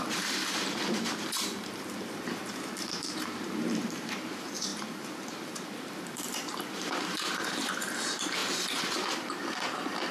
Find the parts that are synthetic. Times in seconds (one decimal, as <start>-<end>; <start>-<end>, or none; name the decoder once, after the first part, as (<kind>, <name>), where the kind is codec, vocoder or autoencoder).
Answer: 0.0-10.1 (vocoder, BigVGAN v2)